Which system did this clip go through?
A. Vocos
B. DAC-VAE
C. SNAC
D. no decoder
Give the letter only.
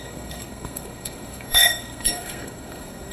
C